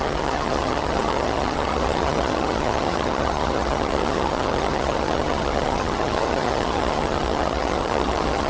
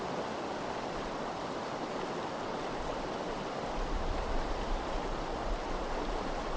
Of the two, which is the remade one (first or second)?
first